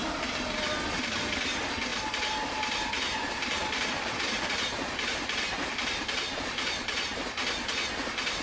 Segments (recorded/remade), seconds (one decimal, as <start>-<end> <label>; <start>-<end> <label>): 0.0-7.4 remade; 7.4-8.4 recorded